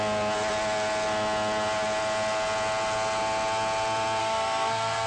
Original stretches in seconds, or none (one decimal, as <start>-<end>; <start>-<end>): 0.0-4.2